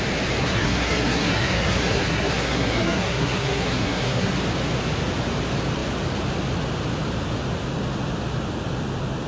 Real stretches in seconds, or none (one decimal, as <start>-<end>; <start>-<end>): 0.0-0.4; 4.3-9.3